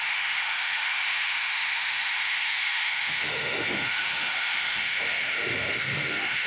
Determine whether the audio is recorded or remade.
remade